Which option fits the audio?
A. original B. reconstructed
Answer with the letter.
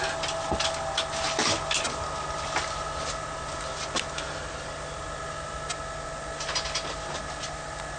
A